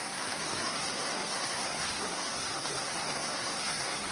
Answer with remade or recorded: remade